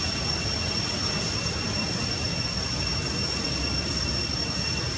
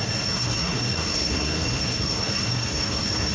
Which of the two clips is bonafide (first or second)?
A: first